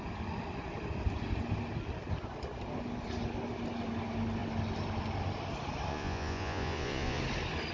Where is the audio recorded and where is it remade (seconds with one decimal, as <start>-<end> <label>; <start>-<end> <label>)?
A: 0.0-5.9 recorded; 5.9-7.2 remade; 7.2-7.7 recorded